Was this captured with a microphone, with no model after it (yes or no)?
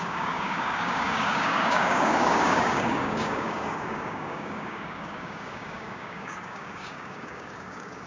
no